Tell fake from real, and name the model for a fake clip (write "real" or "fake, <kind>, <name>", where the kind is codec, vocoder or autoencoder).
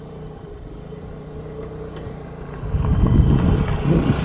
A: real